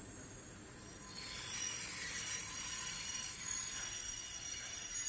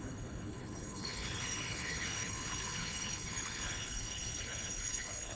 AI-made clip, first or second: second